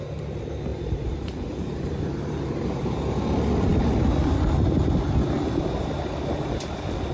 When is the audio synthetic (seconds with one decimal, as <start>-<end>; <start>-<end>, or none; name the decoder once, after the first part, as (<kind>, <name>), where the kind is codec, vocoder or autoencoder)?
0.7-3.2 (vocoder, BigVGAN v2)

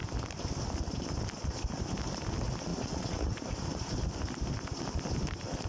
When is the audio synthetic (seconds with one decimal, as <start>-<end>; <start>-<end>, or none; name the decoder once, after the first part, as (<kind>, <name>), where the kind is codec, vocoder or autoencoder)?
2.7-3.5 (vocoder, Vocos)

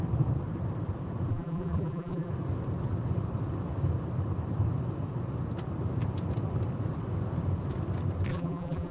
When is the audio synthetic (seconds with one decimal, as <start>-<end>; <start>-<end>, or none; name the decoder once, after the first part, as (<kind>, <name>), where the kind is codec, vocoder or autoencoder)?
1.3-2.3 (vocoder, BigVGAN v2); 8.3-8.9

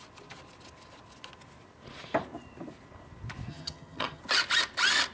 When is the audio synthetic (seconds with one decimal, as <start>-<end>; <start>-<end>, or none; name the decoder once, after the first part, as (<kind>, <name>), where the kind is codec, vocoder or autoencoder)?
3.5-4.2 (vocoder, HiFi-GAN)

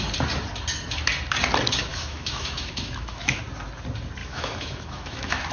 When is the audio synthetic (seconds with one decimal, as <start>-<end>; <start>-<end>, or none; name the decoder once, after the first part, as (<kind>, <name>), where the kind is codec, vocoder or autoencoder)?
1.9-3.4 (autoencoder, DAC-VAE); 4.2-5.5

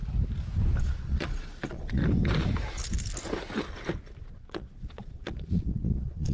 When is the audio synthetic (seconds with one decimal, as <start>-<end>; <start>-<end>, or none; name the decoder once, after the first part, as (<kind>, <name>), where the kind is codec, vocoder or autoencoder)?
0.8-2.0 (vocoder, Vocos); 4.3-6.3

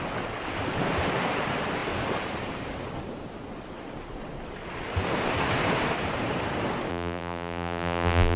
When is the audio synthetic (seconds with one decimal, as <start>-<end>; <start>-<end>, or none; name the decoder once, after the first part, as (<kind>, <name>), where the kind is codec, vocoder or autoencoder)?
6.9-8.4 (vocoder, BigVGAN v2)

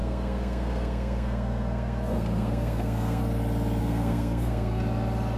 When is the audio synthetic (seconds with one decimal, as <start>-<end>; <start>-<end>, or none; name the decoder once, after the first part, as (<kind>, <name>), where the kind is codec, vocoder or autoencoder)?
0.0-3.2 (codec, SNAC); 3.8-4.8